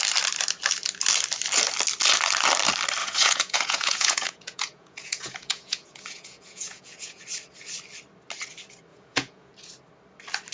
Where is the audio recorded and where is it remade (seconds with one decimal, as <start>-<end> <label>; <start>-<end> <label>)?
0.0-3.0 recorded; 3.0-7.2 remade; 7.2-8.9 recorded; 8.9-9.5 remade; 9.5-10.5 recorded